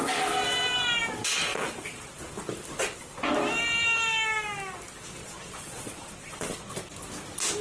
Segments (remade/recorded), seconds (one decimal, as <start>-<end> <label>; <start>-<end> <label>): 0.0-1.5 recorded; 1.5-2.1 remade; 2.1-5.2 recorded; 5.2-6.7 remade; 6.7-7.6 recorded